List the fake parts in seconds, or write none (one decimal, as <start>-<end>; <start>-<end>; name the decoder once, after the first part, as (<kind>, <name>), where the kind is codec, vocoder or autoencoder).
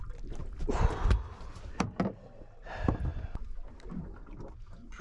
none